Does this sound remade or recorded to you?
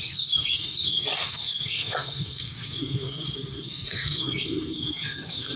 remade